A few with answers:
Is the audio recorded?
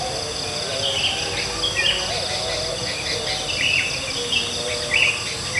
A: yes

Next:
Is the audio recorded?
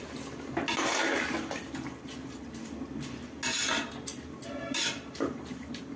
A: yes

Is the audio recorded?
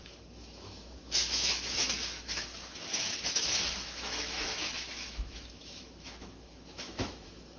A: no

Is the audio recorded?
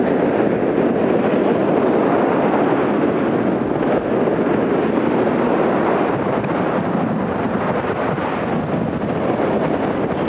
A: yes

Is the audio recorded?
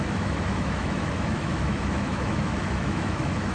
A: no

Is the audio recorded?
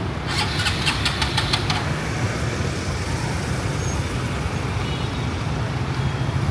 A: yes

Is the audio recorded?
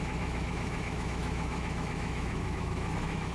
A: no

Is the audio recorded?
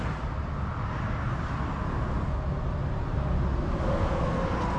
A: yes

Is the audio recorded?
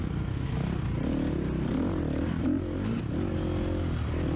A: yes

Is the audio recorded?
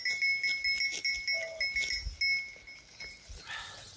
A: yes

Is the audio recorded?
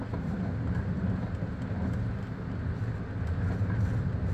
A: yes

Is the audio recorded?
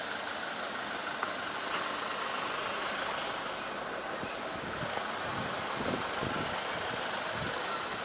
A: yes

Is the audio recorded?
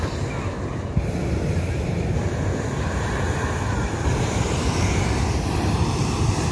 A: yes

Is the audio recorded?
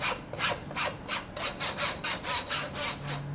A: yes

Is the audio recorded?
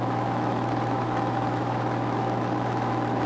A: no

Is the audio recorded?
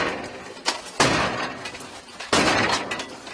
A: yes